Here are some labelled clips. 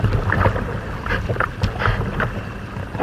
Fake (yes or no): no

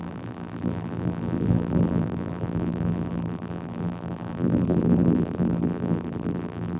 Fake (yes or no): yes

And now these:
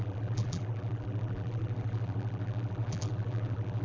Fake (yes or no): yes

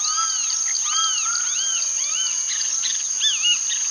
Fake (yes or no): no